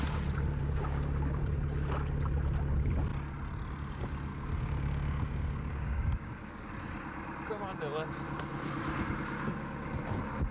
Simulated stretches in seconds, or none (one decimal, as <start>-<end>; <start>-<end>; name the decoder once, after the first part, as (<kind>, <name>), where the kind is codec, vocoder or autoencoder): 0.6-1.4 (codec, DAC); 4.3-6.7